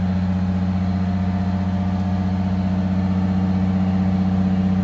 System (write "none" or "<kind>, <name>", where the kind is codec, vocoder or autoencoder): none